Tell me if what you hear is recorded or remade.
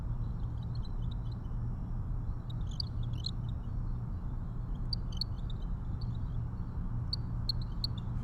recorded